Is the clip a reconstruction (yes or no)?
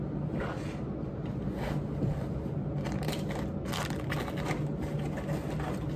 no